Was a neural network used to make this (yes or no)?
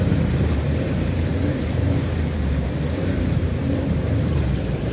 yes